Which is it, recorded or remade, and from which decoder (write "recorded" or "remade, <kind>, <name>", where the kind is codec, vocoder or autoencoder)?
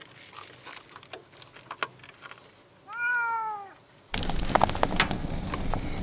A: recorded